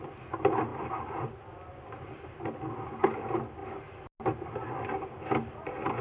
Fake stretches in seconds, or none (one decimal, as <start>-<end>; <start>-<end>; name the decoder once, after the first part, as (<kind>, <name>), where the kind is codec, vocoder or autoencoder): none